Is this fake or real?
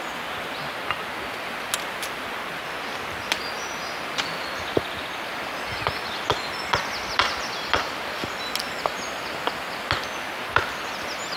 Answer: real